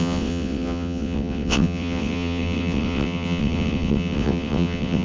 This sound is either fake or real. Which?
fake